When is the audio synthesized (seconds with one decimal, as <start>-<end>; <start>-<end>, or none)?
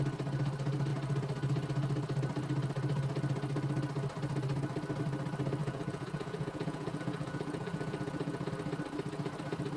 5.6-8.5